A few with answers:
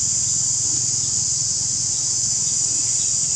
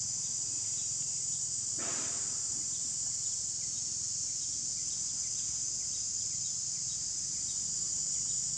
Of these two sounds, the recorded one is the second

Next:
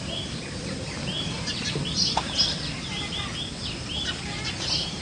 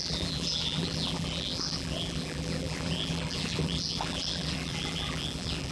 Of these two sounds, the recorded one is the first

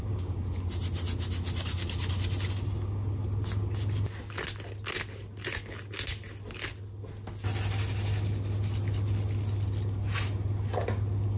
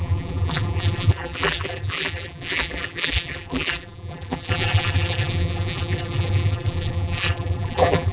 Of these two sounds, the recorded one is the first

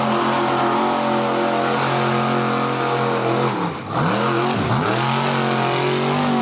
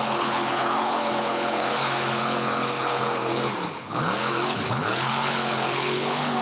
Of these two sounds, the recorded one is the first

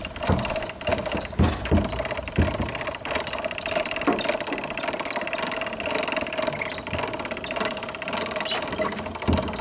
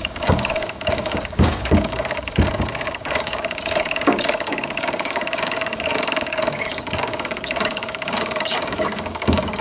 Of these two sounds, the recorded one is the first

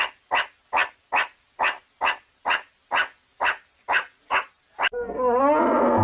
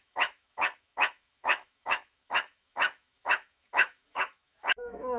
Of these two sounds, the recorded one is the first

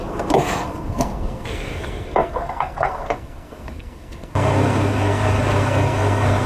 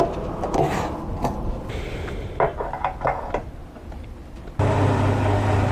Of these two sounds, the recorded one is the second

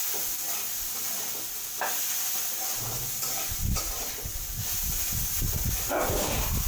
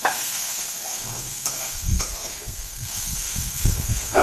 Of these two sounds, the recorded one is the first